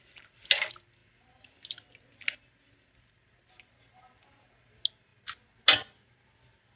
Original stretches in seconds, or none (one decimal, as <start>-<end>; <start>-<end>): 0.0-6.8